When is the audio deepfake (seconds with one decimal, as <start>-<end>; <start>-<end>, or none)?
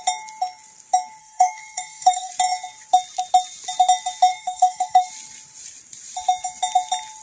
1.2-2.3; 4.3-5.1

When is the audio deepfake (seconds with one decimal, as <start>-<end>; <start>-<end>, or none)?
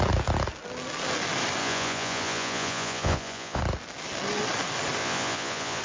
1.6-3.6; 5.0-5.8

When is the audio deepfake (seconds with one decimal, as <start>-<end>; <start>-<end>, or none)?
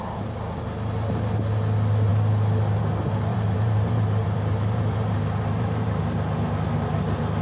3.3-6.0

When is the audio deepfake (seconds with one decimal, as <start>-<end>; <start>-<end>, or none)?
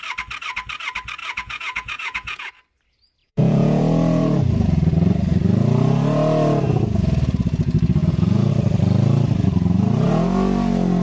1.2-2.5; 3.2-3.8; 8.0-8.5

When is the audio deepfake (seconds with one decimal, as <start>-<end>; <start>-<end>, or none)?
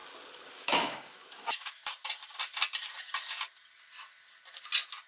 0.5-1.8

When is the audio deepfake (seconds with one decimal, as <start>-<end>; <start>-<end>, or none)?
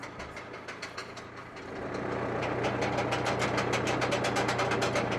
none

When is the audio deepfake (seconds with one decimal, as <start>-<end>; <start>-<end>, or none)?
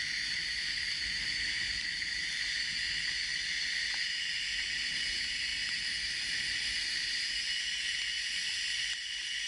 0.0-3.3; 4.1-9.5